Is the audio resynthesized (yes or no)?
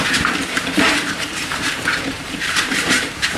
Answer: yes